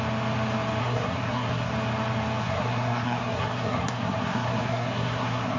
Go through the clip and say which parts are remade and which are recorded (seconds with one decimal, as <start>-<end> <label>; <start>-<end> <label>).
0.0-0.8 recorded; 0.8-1.7 remade; 1.7-2.4 recorded; 2.4-5.6 remade